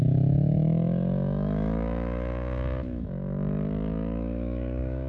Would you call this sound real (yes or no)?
no